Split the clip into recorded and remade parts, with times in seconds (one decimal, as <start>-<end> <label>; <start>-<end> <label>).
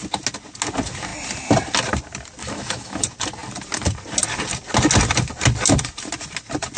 0.0-2.4 recorded; 2.4-3.0 remade; 3.0-6.8 recorded